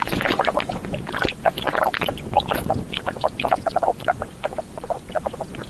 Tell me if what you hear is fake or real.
fake